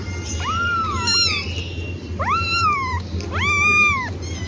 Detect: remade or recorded recorded